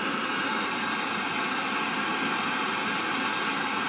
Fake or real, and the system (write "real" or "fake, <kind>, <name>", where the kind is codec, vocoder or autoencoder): real